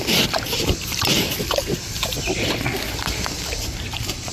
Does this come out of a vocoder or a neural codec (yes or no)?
yes